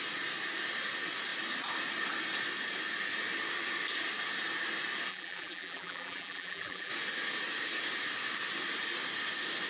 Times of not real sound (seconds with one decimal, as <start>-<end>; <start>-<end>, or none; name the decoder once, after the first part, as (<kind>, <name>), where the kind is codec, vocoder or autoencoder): 5.1-6.9 (vocoder, BigVGAN v2)